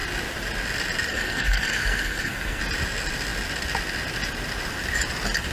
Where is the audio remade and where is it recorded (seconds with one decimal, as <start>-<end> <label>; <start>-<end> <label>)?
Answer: 0.0-1.1 recorded; 1.1-2.6 remade; 2.6-5.5 recorded